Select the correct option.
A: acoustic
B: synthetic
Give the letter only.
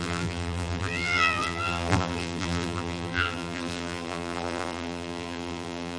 B